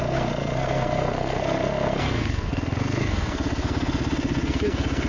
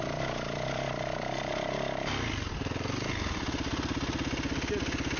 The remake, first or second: first